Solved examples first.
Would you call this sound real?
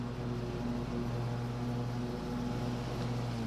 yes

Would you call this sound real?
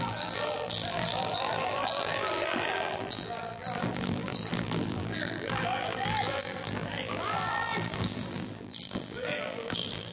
no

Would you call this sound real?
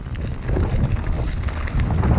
yes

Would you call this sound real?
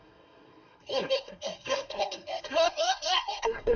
no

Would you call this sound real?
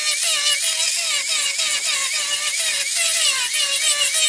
yes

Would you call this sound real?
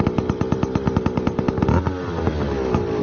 yes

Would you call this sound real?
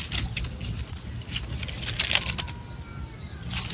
yes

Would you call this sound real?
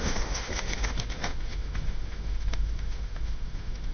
no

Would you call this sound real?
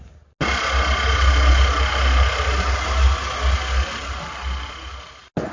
yes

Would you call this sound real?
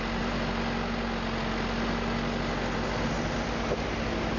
yes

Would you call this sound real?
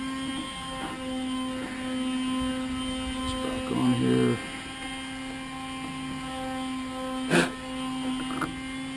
yes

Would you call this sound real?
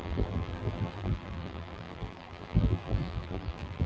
no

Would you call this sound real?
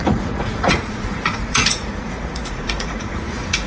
no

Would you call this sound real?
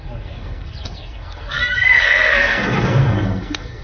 no